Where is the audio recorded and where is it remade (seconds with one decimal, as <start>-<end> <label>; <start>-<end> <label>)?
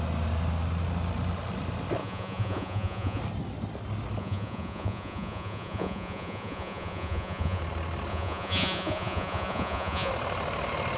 0.0-2.0 recorded; 2.0-3.2 remade; 3.2-4.2 recorded; 4.2-7.6 remade; 7.6-8.1 recorded; 8.1-10.1 remade; 10.1-11.0 recorded